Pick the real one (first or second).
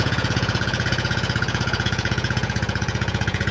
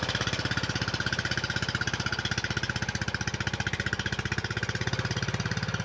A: second